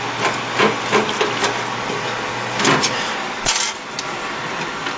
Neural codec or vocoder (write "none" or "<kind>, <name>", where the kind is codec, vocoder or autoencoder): none